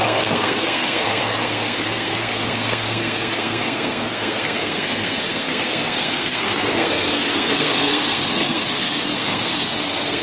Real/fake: fake